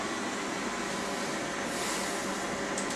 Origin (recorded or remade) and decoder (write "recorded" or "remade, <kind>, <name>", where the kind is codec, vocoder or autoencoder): recorded